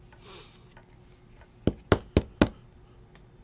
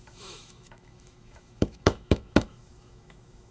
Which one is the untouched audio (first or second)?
first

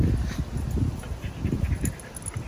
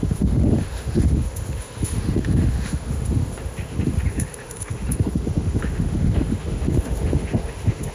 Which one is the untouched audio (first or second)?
first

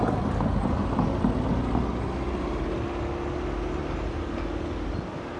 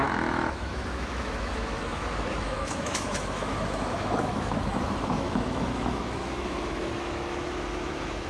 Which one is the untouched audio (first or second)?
first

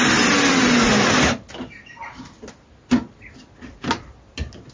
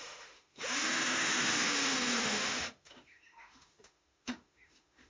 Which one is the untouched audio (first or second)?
first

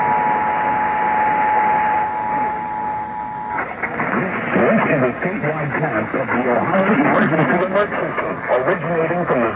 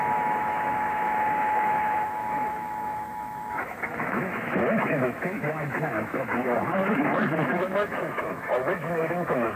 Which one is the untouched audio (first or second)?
first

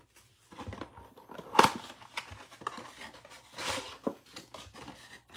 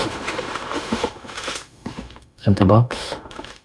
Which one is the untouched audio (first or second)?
first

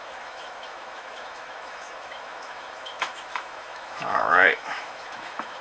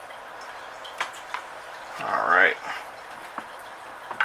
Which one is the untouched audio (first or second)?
second